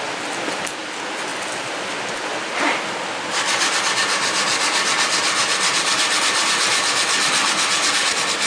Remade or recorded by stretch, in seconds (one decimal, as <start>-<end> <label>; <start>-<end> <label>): 0.0-8.5 recorded

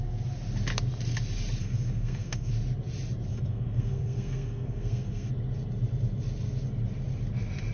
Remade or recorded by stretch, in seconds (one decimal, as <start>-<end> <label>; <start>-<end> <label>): 0.0-1.6 recorded; 1.6-2.5 remade; 2.5-3.3 recorded; 3.3-5.3 remade; 5.3-7.7 recorded

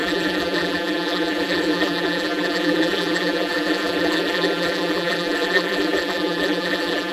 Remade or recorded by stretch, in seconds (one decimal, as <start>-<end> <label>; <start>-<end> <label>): 0.0-7.1 remade

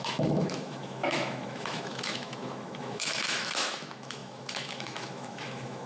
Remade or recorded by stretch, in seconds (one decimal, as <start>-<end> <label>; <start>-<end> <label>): 0.0-5.9 remade

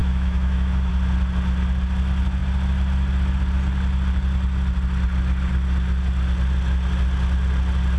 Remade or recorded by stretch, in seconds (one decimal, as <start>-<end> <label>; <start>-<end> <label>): 0.0-0.9 remade; 0.9-8.0 recorded

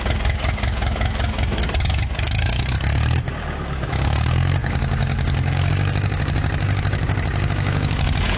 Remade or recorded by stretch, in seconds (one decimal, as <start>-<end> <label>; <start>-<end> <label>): 0.0-8.4 remade

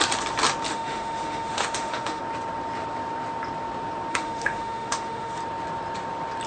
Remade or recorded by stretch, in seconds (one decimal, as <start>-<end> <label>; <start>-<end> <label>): 0.0-0.7 recorded; 0.7-2.2 remade; 2.2-4.1 recorded; 4.1-5.4 remade; 5.4-6.5 recorded

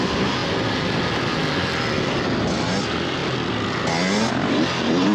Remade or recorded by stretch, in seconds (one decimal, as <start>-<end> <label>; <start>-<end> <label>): 0.0-5.1 recorded